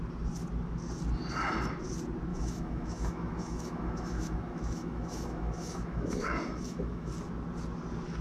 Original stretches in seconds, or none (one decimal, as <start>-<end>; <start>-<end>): 0.0-2.3; 7.1-8.2

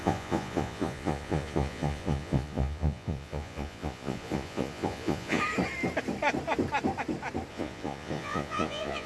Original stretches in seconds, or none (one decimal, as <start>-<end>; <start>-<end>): 5.4-7.5

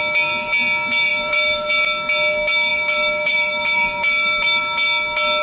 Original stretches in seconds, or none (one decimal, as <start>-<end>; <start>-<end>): 0.0-1.1; 1.7-2.7; 4.6-5.4

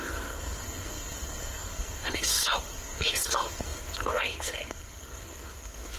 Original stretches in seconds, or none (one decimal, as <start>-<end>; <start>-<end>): none

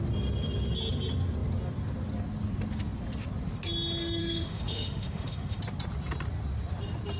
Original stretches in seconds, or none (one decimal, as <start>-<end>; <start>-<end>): 0.0-4.2; 5.6-7.2